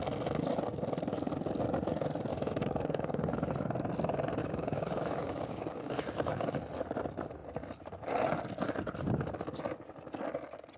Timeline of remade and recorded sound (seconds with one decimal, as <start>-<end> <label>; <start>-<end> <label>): 0.0-2.3 recorded; 2.3-3.5 remade; 3.5-4.4 recorded; 4.4-6.6 remade; 6.6-10.8 recorded